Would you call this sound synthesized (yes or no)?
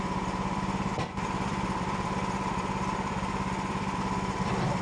yes